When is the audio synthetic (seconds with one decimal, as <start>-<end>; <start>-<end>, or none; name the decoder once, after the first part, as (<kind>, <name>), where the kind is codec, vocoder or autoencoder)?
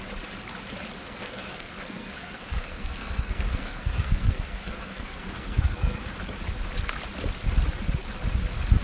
1.0-6.0 (codec, SNAC)